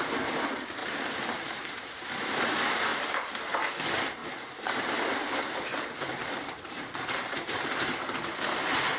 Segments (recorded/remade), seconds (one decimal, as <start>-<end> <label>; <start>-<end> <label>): 0.0-0.8 recorded; 0.8-2.5 remade; 2.5-2.9 recorded; 2.9-3.4 remade; 3.4-4.2 recorded; 4.2-7.9 remade; 7.9-9.0 recorded